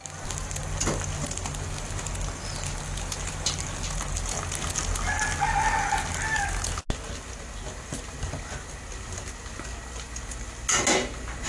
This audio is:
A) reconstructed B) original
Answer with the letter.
B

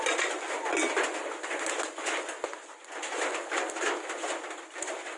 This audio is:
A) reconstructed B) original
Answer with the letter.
B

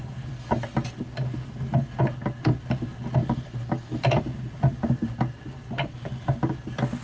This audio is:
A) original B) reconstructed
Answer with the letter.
A